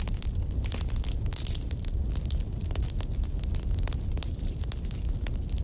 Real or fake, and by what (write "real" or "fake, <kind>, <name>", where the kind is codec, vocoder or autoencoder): real